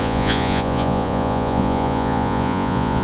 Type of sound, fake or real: fake